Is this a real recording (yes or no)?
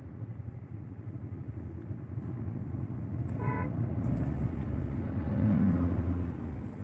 no